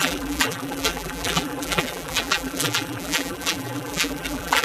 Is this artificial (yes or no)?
yes